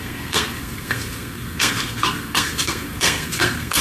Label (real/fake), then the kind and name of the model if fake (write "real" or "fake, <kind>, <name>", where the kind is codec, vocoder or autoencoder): fake, codec, SNAC